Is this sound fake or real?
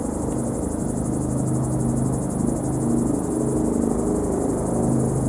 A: real